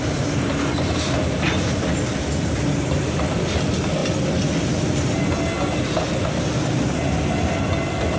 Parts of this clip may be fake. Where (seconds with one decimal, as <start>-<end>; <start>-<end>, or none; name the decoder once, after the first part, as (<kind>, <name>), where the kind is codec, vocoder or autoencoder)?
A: none